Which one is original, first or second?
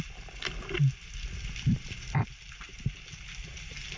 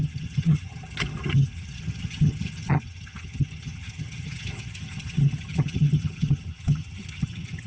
first